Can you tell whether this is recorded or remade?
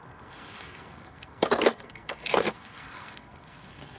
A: remade